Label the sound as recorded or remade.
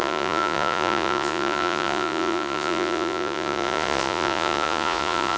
remade